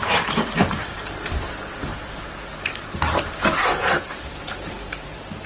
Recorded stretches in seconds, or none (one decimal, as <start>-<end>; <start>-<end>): 1.3-1.9; 5.1-5.5